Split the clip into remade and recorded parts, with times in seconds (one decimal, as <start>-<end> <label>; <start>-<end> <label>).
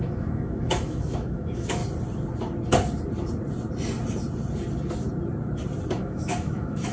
0.0-1.8 remade; 1.8-5.9 recorded; 5.9-6.9 remade